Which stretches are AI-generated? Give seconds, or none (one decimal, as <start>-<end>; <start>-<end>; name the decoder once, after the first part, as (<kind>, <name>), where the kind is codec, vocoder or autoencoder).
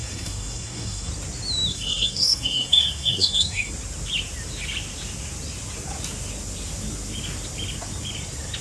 0.0-1.1 (codec, SNAC); 1.7-3.7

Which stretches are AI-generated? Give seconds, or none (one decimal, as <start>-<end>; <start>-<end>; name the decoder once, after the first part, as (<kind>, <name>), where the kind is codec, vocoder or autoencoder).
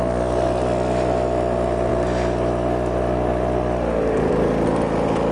none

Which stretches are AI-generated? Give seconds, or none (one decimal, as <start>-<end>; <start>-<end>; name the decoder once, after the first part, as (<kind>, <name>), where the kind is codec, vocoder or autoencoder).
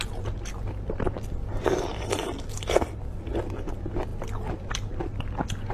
none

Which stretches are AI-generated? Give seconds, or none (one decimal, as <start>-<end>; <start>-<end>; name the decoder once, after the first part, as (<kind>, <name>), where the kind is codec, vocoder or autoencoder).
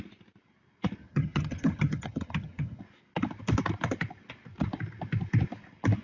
1.0-2.8 (vocoder, HiFi-GAN)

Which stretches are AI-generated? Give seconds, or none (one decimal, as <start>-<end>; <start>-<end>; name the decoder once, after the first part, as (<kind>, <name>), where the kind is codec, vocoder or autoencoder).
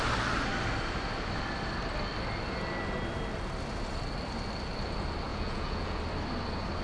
5.3-6.0 (vocoder, Vocos)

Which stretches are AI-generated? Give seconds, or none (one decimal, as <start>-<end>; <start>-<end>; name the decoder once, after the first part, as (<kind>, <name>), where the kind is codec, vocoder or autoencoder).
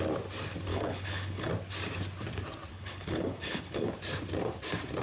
0.7-1.5 (codec, HILCodec); 2.7-3.9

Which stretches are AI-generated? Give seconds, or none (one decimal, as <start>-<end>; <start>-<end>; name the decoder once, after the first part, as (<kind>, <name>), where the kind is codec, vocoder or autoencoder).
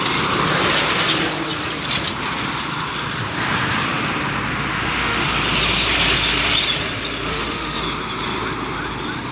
4.7-5.3 (autoencoder, DAC-VAE); 7.3-7.8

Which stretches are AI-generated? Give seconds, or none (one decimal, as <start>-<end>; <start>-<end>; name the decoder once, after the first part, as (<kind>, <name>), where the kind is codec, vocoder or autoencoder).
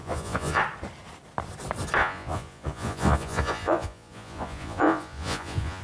0.0-0.6 (vocoder, Vocos); 2.0-5.8